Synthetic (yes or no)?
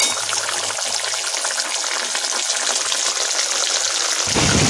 no